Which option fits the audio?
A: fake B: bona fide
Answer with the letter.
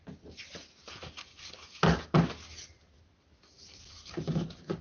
B